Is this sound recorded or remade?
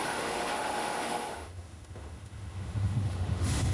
remade